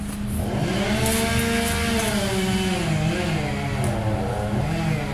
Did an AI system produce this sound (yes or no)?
no